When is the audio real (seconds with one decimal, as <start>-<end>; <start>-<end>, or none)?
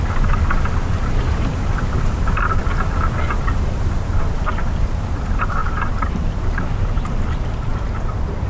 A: 0.0-5.6; 6.2-8.5